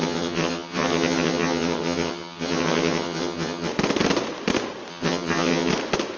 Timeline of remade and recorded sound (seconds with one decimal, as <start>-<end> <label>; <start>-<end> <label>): 0.0-3.7 remade; 3.7-4.9 recorded; 4.9-5.7 remade; 5.7-6.2 recorded